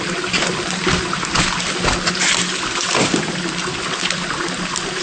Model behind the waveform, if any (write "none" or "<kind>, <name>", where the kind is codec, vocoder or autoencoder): none